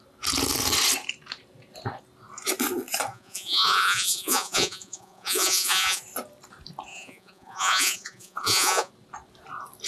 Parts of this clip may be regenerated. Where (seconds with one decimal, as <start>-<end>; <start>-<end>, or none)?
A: 3.1-6.0; 6.9-8.9